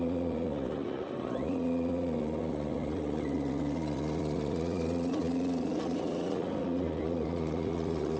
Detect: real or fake fake